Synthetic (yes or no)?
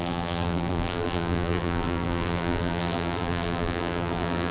yes